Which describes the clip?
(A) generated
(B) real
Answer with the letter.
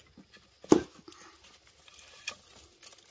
B